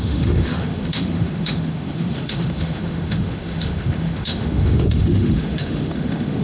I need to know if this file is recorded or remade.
remade